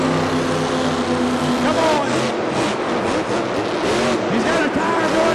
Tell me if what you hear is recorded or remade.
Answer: recorded